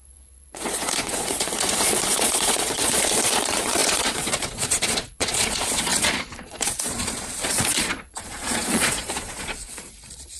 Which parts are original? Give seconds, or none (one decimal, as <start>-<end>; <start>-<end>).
none